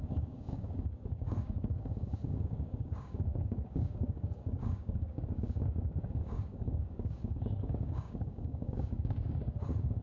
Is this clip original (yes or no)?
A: no